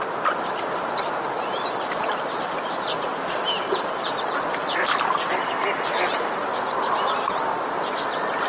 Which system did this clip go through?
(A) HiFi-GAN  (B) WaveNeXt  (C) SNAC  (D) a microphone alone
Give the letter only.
D